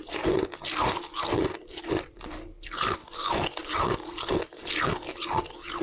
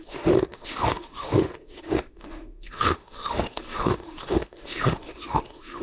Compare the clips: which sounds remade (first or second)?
second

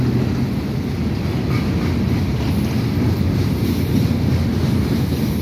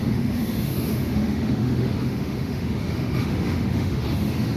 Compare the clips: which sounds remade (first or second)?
second